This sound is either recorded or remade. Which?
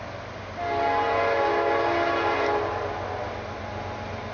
recorded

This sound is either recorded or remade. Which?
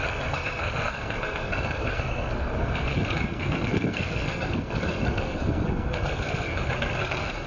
remade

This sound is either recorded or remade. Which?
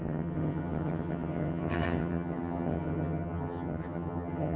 remade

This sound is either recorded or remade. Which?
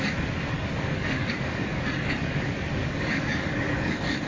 remade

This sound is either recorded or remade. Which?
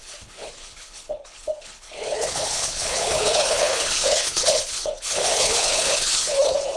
remade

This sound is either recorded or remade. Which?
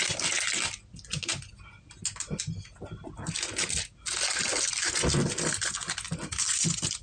recorded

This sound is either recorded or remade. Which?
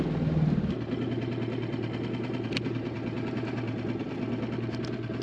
recorded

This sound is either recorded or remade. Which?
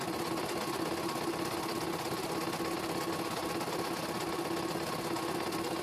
recorded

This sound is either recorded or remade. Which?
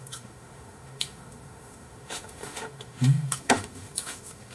remade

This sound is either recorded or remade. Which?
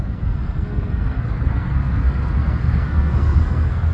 remade